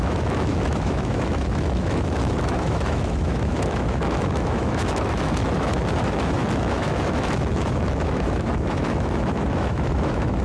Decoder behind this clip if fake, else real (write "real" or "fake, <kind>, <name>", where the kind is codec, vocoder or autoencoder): fake, autoencoder, DAC-VAE